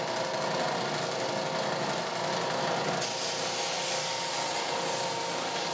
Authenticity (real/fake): real